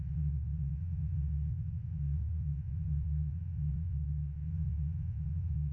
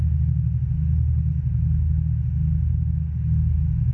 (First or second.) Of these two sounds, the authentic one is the second